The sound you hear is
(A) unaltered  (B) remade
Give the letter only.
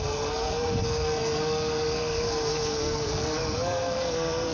B